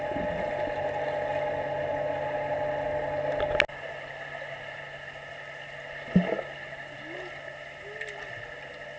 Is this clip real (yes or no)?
yes